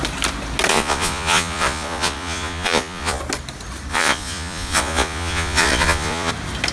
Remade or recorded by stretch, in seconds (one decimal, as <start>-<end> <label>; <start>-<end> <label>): 0.0-0.7 recorded; 0.7-3.2 remade; 3.2-3.9 recorded; 3.9-6.3 remade; 6.3-6.7 recorded